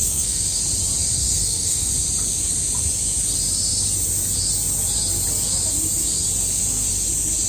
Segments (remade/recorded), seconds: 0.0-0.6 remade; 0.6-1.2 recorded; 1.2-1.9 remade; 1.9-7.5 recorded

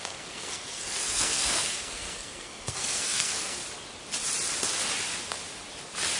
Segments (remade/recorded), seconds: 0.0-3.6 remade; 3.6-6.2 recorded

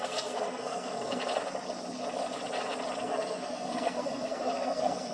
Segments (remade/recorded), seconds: 0.0-1.2 remade; 1.2-3.0 recorded; 3.0-5.1 remade

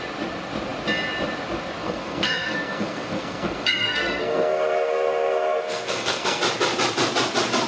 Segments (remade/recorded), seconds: 0.0-1.8 recorded; 1.8-6.4 remade; 6.4-7.7 recorded

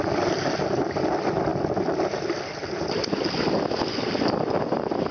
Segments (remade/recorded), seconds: 0.0-5.1 recorded

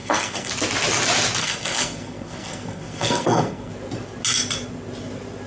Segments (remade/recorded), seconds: 0.0-0.5 remade; 0.5-1.4 recorded; 1.4-3.7 remade; 3.7-5.5 recorded

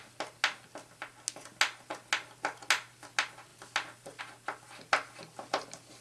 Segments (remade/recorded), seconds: 0.0-6.0 recorded

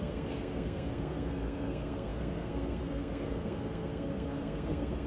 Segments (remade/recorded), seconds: 0.0-5.1 remade